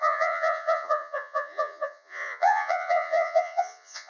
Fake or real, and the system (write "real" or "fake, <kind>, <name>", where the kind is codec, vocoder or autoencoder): fake, vocoder, Vocos